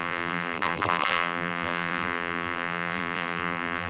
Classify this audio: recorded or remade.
remade